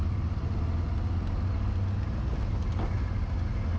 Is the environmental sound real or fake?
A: real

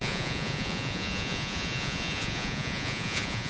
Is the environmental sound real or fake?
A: fake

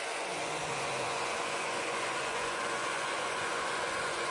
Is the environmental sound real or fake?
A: fake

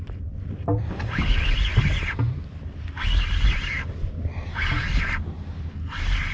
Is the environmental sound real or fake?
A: real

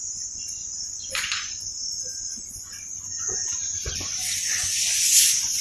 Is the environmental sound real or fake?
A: fake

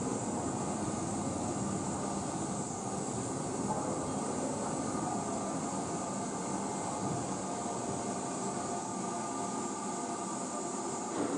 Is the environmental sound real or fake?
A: real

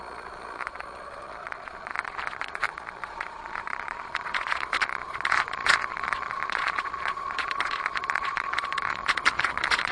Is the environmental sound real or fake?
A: fake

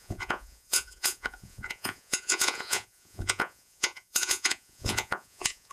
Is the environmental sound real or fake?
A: fake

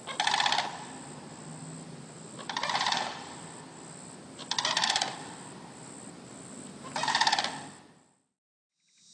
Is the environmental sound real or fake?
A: real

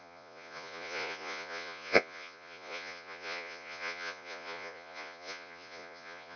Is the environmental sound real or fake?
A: fake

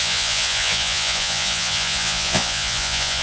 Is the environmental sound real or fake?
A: fake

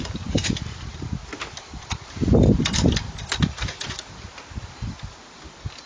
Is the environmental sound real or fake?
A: real